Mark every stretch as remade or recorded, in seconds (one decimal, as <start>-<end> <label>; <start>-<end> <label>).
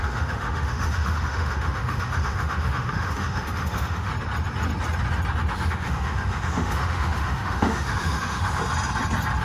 0.0-4.1 remade; 4.1-5.7 recorded; 5.7-8.6 remade; 8.6-9.4 recorded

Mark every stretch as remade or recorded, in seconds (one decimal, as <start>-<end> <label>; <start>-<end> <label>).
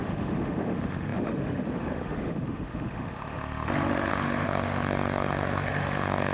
0.0-6.3 remade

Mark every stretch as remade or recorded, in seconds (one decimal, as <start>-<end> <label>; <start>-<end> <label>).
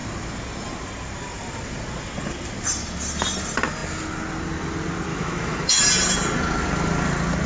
0.0-5.1 recorded; 5.1-5.8 remade; 5.8-7.5 recorded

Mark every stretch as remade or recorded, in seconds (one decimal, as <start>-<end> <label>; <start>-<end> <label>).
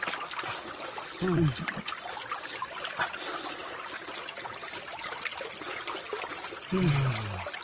0.0-7.6 recorded